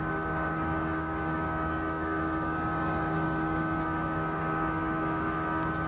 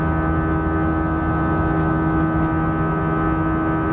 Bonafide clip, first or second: second